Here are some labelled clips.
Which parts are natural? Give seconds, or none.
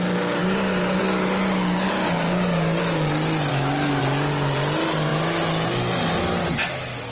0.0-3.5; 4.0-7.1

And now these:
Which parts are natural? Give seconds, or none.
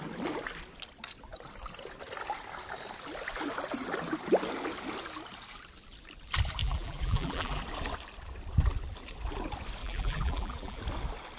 0.0-6.6; 7.6-9.8; 10.8-11.4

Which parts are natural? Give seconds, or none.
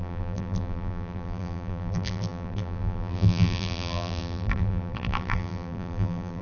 none